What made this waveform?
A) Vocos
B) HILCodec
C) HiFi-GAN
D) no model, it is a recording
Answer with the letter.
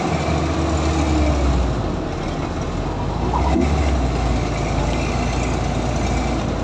D